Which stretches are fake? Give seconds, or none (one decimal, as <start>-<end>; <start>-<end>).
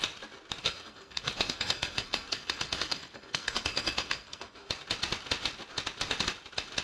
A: 0.6-4.7